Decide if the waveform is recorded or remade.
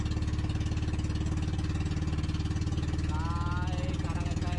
recorded